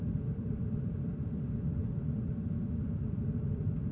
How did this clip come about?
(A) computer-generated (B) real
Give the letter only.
A